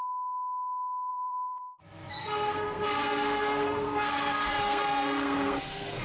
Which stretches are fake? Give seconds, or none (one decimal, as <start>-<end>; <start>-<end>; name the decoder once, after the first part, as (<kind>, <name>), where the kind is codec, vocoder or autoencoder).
1.1-1.8 (codec, SNAC); 2.2-6.0

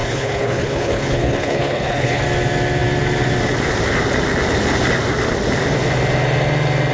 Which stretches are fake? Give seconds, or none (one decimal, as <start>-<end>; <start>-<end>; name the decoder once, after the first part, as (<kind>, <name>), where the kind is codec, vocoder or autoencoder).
0.0-2.2 (codec, HILCodec)

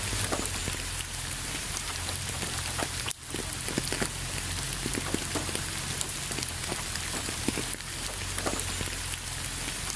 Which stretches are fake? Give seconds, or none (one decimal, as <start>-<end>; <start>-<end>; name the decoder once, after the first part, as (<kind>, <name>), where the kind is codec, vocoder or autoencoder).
0.6-3.1 (vocoder, BigVGAN v2)

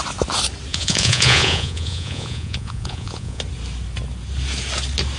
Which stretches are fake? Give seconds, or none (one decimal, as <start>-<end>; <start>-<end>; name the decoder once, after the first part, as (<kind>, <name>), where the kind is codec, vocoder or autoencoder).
0.7-3.4 (vocoder, Vocos)